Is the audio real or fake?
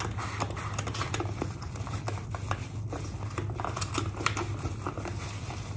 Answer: real